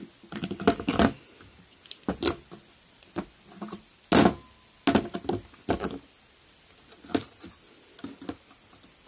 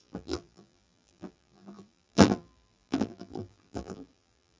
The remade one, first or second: second